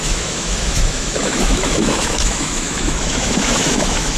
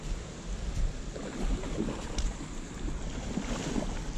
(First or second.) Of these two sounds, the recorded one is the second